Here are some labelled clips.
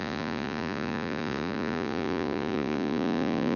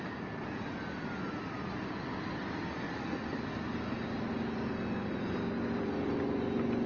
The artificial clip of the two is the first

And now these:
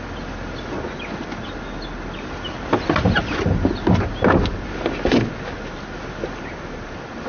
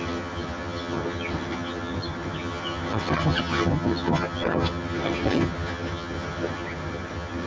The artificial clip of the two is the second